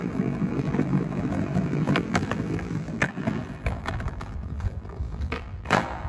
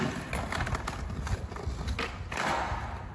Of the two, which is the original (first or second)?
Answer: second